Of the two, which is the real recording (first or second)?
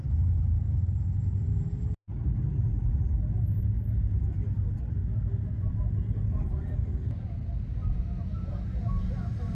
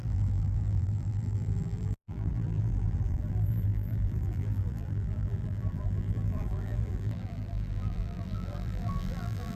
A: first